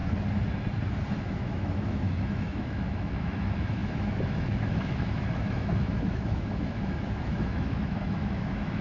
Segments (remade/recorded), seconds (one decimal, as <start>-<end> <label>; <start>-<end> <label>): 0.0-1.2 recorded; 1.2-8.8 remade